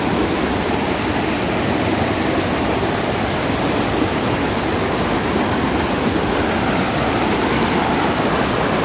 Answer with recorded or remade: recorded